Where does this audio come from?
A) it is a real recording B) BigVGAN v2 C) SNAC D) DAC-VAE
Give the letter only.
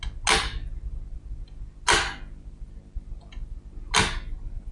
A